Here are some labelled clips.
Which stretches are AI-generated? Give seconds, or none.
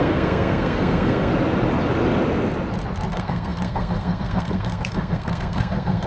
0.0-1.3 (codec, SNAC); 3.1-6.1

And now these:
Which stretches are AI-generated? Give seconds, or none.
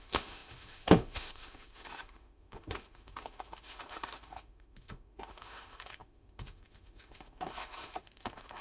0.0-8.6 (autoencoder, DAC-VAE)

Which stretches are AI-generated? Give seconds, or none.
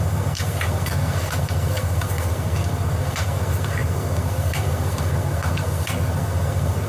0.0-6.9 (codec, SNAC)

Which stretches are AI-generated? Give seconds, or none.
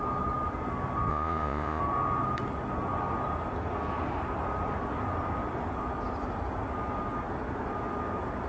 1.1-1.8 (vocoder, Vocos)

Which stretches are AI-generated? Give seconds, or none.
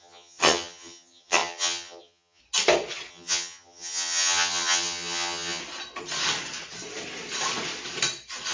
0.0-2.4 (vocoder, HiFi-GAN); 3.1-5.6